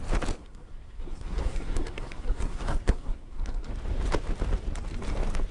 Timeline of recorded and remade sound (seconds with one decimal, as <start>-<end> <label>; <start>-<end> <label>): 0.0-0.4 recorded; 0.4-3.7 remade; 3.7-5.5 recorded